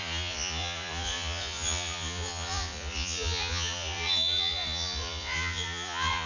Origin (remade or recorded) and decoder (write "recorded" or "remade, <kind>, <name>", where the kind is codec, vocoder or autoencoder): remade, vocoder, Vocos